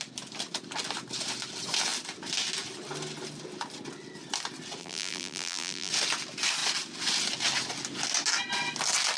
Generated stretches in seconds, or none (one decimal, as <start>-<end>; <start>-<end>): 4.8-5.9